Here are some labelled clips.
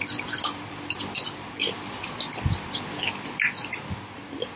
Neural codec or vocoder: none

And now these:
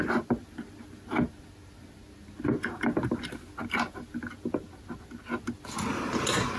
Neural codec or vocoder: none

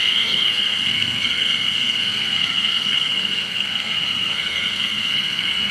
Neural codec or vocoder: codec, SNAC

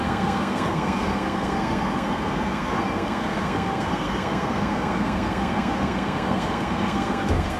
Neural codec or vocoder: codec, SNAC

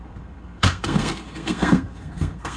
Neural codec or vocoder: codec, SNAC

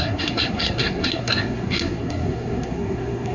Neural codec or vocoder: codec, SNAC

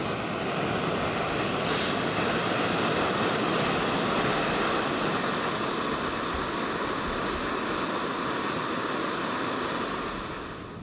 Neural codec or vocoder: none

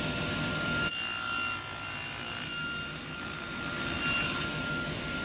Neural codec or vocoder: none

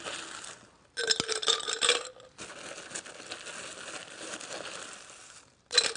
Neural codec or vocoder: none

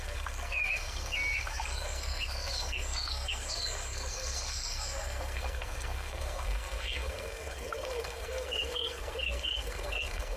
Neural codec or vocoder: codec, SNAC